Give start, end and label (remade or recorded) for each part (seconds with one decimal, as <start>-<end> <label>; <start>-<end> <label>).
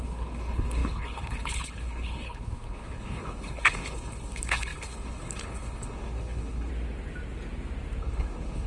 0.0-6.7 remade; 6.7-8.0 recorded; 8.0-8.7 remade